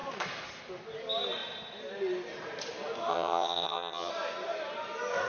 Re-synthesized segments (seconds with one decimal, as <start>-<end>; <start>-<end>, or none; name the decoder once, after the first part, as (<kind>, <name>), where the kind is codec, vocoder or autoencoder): 3.1-4.1 (vocoder, HiFi-GAN)